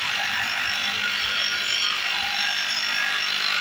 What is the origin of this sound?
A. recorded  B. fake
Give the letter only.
A